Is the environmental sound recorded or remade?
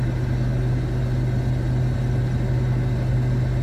recorded